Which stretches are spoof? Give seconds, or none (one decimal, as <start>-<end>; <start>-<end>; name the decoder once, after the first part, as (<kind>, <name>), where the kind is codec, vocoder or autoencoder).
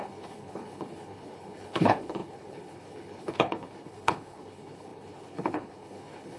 0.0-6.4 (codec, HILCodec)